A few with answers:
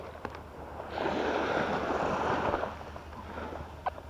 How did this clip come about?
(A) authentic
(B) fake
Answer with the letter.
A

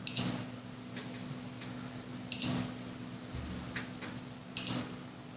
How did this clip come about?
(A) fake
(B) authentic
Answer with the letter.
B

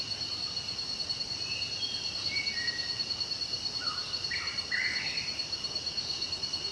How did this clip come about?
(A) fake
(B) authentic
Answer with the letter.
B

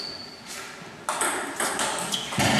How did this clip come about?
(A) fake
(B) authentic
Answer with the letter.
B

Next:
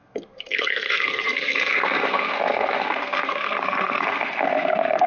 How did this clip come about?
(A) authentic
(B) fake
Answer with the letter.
B